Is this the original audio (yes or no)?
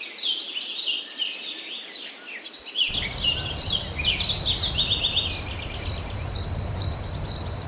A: yes